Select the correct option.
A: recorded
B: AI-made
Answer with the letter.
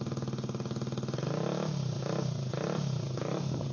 A